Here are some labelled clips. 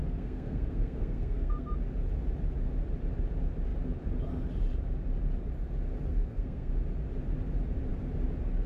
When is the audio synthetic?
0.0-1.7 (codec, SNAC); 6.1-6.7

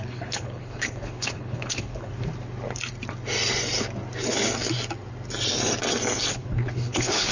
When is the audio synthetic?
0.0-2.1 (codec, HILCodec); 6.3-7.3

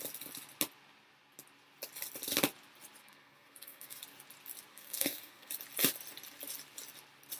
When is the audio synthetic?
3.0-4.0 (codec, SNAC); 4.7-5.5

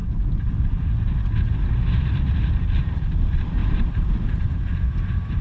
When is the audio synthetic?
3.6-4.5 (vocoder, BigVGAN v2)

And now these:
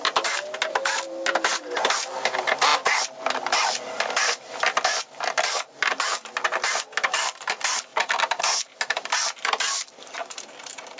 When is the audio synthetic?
1.3-2.1 (vocoder, BigVGAN v2)

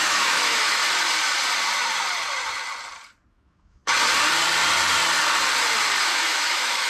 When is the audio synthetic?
0.0-0.8 (autoencoder, DAC-VAE); 3.3-3.8; 6.0-6.9

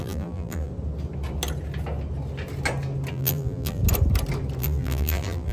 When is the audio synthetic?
0.0-0.7 (vocoder, BigVGAN v2); 3.1-3.8; 4.6-5.5

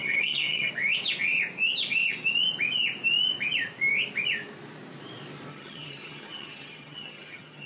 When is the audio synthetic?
0.0-0.7 (vocoder, HiFi-GAN); 5.5-7.7